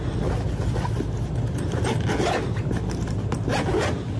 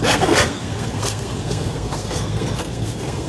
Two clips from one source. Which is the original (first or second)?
first